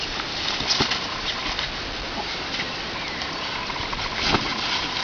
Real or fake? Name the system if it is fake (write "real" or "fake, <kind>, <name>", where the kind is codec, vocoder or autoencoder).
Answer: real